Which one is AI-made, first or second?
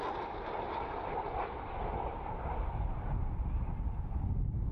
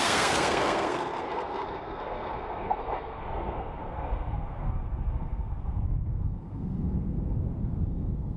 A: second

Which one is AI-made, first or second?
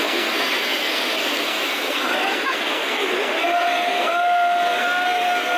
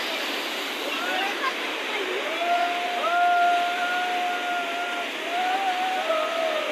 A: first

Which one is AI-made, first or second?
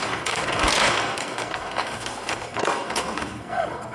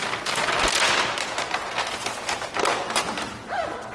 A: first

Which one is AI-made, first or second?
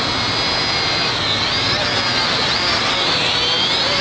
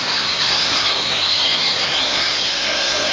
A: second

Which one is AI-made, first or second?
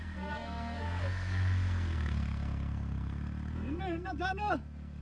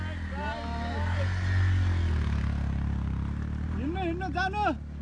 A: first